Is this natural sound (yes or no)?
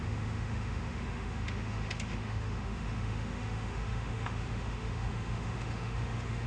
no